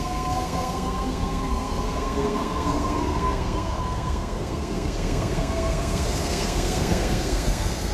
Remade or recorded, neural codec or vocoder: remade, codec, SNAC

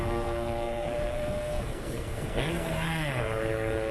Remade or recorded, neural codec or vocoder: remade, codec, SNAC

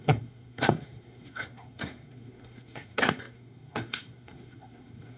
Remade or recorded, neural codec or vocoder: remade, codec, SNAC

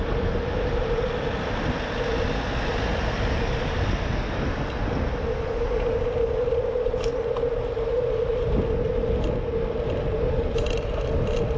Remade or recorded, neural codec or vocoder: recorded